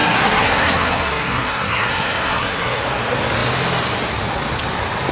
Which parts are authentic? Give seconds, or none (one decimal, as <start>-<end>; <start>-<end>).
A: 2.8-5.1